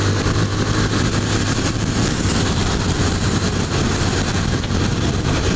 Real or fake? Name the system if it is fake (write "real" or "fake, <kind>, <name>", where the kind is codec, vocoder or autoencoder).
fake, vocoder, BigVGAN v2